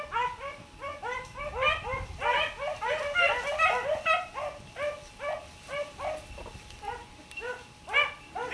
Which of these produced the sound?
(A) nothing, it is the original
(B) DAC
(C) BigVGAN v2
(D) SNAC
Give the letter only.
A